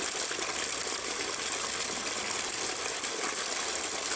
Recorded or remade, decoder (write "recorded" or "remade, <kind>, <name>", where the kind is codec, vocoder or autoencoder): recorded